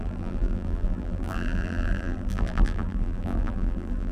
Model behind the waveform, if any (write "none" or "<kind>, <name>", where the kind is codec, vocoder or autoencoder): vocoder, BigVGAN v2